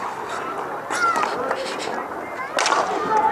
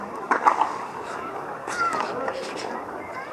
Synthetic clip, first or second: second